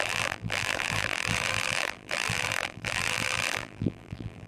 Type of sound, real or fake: fake